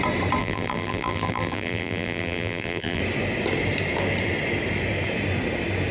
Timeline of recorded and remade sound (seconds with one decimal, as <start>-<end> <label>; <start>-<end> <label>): 0.0-0.4 recorded; 0.4-3.0 remade; 3.0-5.9 recorded